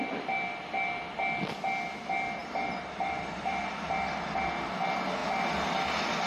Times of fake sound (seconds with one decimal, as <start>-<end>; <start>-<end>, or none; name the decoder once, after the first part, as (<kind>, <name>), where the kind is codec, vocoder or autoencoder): 2.4-3.6 (vocoder, BigVGAN v2)

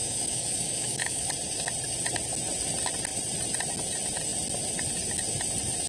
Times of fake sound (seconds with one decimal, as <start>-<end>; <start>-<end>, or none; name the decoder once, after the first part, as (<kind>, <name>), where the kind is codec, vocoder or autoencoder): 0.0-1.3 (autoencoder, DAC-VAE)

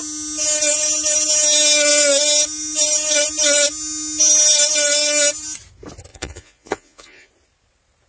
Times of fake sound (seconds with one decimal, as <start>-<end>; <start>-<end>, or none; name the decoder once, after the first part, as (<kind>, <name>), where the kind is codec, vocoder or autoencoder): 6.1-7.3 (vocoder, Vocos)

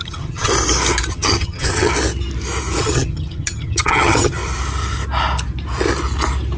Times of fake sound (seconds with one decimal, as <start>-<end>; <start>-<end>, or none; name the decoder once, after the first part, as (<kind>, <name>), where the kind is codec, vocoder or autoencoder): 0.0-0.5 (vocoder, HiFi-GAN); 1.1-1.9; 2.8-4.4

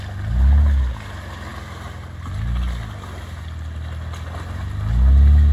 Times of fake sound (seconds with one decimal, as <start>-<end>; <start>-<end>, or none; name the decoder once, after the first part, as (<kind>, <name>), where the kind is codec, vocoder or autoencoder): none

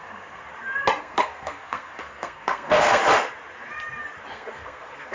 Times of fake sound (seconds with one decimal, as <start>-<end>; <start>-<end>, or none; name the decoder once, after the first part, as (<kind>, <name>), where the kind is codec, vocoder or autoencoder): 0.0-0.4 (codec, SNAC); 1.0-3.0; 4.3-5.1